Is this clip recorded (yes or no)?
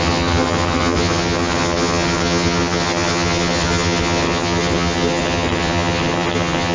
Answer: no